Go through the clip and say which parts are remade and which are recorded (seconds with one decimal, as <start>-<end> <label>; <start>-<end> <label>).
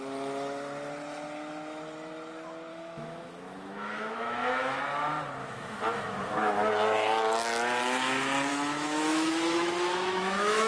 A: 0.0-2.7 recorded; 2.7-4.8 remade; 4.8-5.4 recorded; 5.4-6.7 remade; 6.7-8.5 recorded; 8.5-10.7 remade